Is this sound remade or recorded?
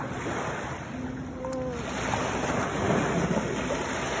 recorded